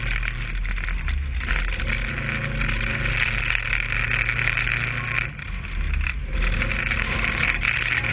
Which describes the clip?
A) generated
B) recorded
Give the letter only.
B